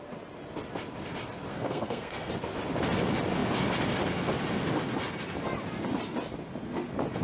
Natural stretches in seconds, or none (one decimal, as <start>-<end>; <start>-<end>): 0.0-1.5; 2.3-7.2